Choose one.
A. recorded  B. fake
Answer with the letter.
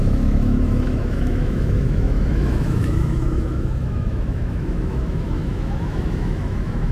B